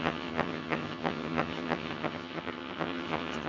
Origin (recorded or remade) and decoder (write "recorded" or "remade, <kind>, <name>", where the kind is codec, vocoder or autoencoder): remade, vocoder, HiFi-GAN